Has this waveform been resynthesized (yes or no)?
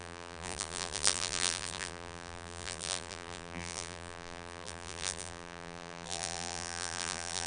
yes